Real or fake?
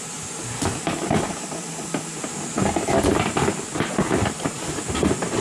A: real